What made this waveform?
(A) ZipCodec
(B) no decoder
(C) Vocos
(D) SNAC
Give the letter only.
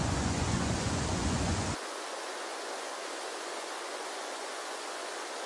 C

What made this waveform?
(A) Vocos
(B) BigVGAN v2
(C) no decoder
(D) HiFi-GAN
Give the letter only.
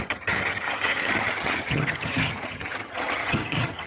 D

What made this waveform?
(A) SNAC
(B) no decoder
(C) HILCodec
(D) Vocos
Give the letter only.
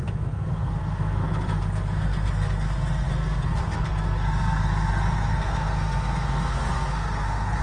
A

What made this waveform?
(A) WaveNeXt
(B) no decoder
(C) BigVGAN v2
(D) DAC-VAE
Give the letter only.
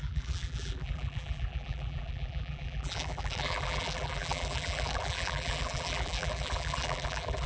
C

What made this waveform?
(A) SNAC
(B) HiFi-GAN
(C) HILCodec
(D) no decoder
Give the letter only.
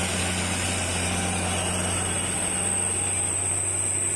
D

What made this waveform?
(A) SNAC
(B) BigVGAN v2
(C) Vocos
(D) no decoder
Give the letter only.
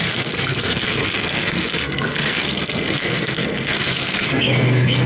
A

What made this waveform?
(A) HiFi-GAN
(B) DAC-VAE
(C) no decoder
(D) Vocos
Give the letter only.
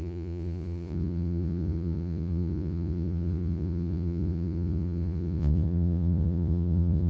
D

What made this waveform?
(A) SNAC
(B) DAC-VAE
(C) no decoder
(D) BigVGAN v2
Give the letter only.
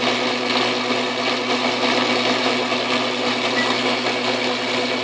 C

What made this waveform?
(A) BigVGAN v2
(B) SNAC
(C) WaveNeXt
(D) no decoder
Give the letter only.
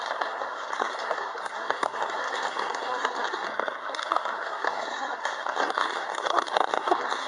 B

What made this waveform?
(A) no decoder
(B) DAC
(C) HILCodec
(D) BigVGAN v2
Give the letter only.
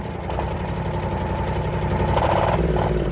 D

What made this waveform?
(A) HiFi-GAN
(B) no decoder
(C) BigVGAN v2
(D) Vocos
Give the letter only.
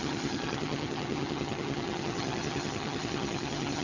A